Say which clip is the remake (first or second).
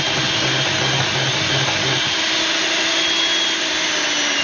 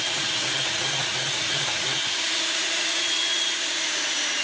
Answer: second